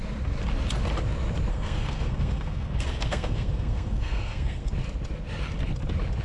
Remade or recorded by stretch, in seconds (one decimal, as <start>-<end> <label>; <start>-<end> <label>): 0.0-1.5 recorded; 1.5-4.7 remade; 4.7-6.2 recorded